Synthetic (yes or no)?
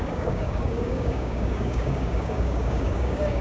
yes